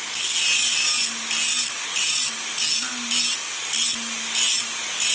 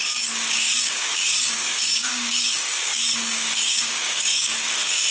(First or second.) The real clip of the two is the first